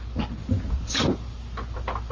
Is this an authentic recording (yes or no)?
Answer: yes